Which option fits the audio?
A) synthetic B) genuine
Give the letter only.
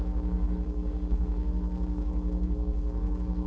A